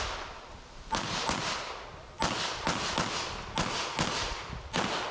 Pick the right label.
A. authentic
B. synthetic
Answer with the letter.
A